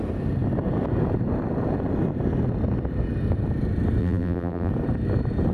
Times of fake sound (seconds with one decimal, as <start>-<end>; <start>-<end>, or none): 4.0-4.7